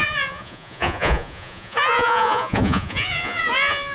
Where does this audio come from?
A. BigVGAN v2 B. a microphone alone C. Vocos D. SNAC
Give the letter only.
C